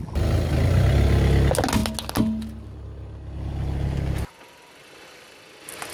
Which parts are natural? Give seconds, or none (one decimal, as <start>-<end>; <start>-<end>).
0.0-5.9